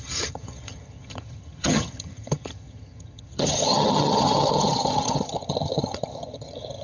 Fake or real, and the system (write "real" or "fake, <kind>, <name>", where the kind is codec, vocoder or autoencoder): fake, vocoder, HiFi-GAN